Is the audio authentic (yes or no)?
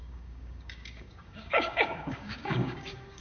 no